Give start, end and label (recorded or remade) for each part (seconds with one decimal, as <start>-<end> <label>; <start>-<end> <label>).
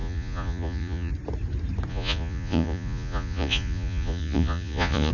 0.0-1.1 remade; 1.1-1.9 recorded; 1.9-5.1 remade